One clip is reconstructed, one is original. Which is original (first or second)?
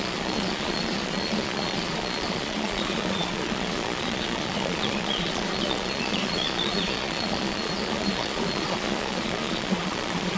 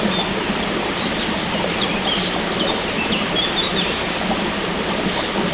second